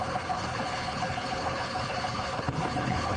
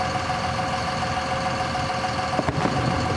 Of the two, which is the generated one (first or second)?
first